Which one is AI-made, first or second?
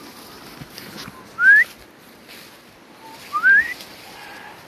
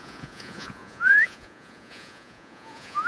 second